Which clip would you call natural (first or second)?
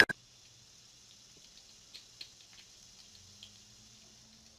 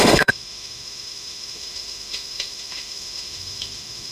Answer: first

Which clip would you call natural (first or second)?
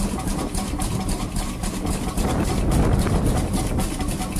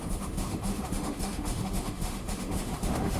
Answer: first